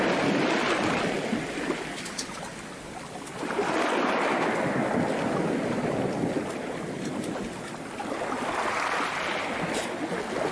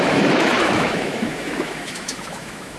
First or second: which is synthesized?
second